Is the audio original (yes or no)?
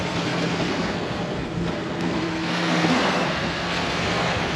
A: no